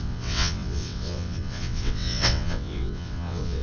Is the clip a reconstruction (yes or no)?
yes